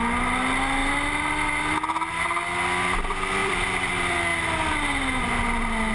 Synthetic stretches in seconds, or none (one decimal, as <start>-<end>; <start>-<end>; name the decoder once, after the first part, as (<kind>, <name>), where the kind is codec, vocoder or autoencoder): 3.4-3.9 (vocoder, BigVGAN v2)